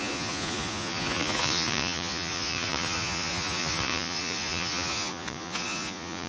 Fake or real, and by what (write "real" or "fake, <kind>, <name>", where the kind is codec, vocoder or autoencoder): fake, vocoder, Vocos